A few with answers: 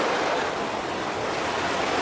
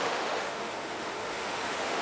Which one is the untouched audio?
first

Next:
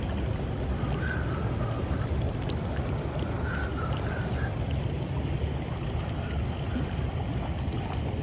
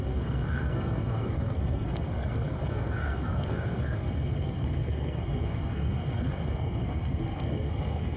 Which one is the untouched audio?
first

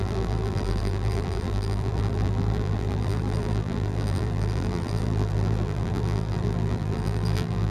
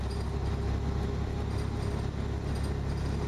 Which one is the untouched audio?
second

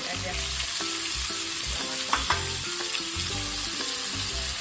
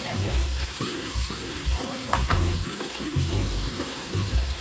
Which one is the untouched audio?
first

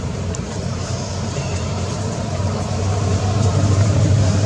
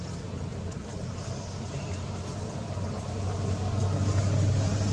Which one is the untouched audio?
second